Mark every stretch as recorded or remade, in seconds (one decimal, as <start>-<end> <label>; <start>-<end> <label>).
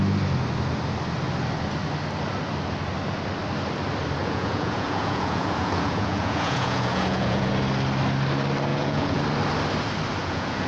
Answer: 0.0-4.2 recorded; 4.2-7.5 remade; 7.5-8.7 recorded; 8.7-9.2 remade; 9.2-10.2 recorded; 10.2-10.7 remade